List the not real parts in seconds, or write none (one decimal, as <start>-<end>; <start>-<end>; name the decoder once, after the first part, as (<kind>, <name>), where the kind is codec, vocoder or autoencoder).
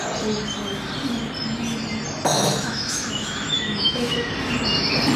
2.3-4.3 (autoencoder, DAC-VAE)